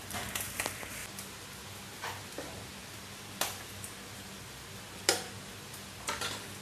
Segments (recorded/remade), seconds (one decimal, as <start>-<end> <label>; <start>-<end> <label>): 0.0-6.6 recorded